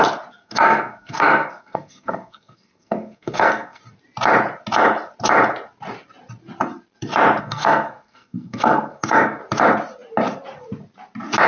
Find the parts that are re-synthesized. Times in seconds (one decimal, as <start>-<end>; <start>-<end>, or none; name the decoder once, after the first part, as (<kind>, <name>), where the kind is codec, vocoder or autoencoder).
0.4-3.8 (codec, SNAC); 7.4-9.4